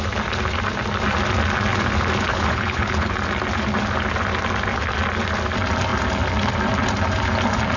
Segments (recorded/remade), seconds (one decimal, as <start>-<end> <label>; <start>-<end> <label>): 0.0-2.3 recorded; 2.3-3.1 remade; 3.1-7.8 recorded